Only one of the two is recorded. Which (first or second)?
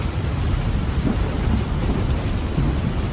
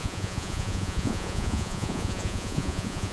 first